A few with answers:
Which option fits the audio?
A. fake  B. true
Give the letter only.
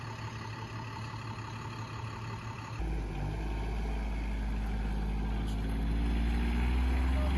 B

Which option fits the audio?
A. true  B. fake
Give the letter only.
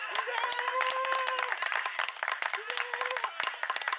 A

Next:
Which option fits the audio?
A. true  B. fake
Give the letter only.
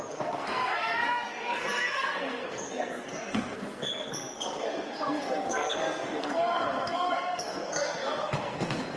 B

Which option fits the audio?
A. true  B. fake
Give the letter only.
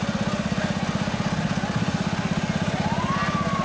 A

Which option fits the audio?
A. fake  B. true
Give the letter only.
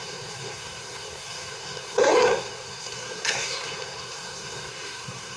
A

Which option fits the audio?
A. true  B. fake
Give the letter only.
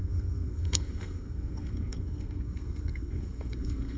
B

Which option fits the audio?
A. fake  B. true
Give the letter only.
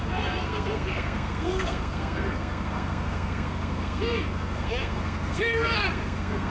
A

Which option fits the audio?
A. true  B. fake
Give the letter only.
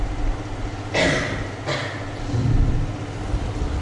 A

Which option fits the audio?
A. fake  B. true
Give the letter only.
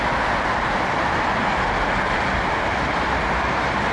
B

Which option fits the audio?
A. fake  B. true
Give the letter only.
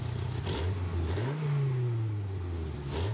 B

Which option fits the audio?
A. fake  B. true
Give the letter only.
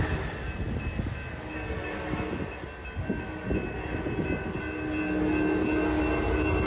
B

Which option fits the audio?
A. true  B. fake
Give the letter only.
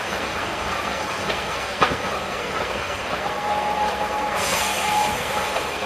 B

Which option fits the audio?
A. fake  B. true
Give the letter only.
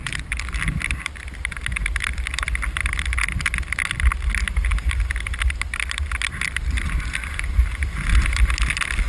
B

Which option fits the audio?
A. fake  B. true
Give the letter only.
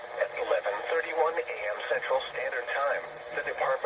B